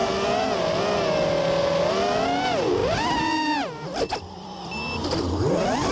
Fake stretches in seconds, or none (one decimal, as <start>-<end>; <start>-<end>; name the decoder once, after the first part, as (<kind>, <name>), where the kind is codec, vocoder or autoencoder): none